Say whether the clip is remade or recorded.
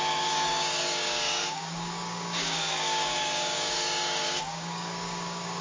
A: remade